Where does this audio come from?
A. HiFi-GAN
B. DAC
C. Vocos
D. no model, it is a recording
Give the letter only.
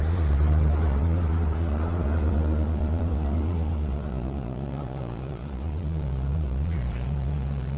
C